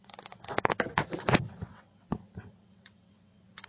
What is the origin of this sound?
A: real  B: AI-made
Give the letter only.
B